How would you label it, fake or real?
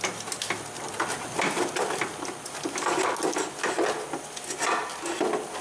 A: real